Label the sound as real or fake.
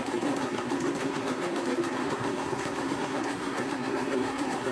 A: fake